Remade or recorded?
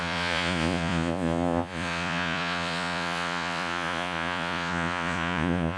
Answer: remade